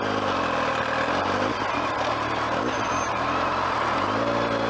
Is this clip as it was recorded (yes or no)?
yes